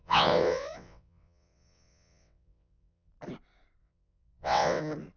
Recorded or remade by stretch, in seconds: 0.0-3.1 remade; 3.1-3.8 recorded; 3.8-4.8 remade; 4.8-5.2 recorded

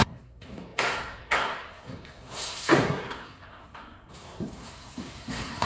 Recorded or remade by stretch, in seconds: 0.0-5.7 remade

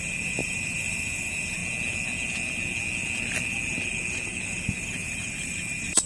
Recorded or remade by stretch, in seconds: 0.0-1.6 remade; 1.6-5.3 recorded; 5.3-6.1 remade